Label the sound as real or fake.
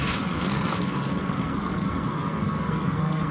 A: fake